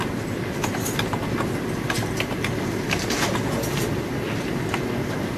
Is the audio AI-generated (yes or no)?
no